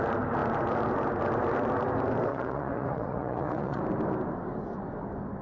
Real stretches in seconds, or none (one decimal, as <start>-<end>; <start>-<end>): 0.0-2.3; 3.8-5.4